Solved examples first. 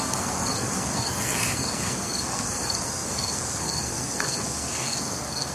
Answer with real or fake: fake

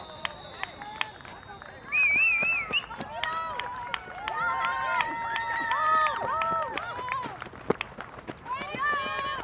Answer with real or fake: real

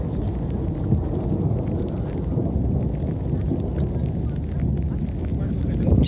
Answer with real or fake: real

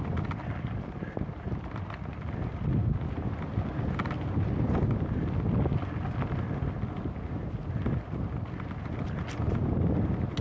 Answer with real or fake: real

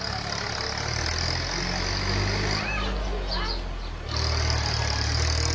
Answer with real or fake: real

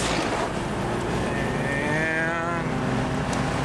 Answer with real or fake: real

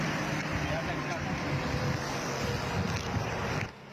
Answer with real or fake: real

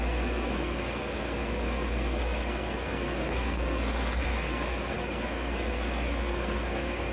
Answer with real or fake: fake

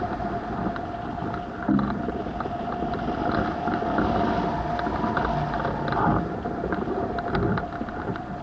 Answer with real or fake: real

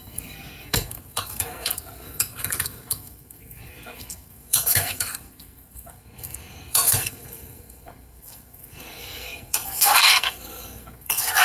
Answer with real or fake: fake